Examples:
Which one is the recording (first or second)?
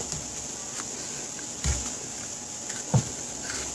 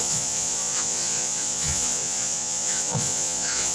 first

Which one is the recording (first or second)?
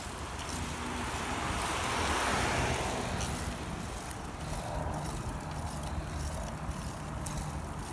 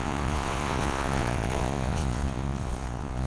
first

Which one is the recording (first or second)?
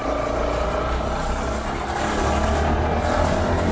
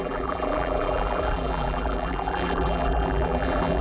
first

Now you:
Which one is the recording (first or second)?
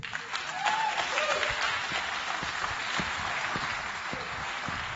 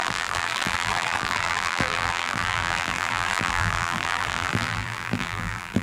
first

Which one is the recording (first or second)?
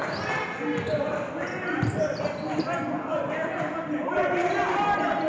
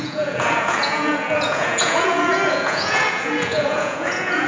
first